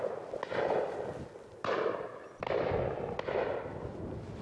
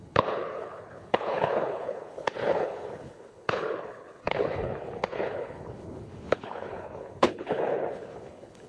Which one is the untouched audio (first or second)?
first